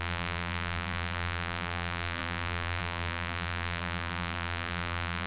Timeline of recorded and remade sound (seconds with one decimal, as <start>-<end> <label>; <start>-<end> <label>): 0.0-5.3 remade